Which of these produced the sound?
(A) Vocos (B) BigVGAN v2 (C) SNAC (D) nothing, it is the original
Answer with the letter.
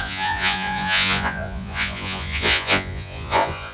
A